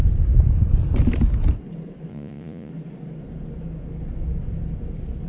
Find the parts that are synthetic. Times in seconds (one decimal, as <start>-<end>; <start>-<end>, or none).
2.1-2.7